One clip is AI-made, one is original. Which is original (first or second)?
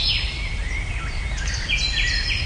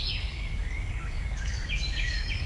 first